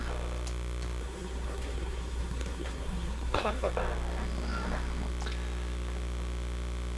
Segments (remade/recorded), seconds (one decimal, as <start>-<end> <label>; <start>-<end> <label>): 0.0-1.0 recorded; 1.0-3.7 remade; 3.7-7.0 recorded